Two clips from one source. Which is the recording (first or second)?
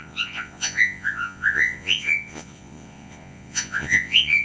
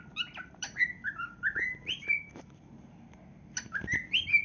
second